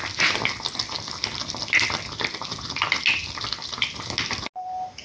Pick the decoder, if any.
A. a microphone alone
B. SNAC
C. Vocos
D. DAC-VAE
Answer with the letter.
A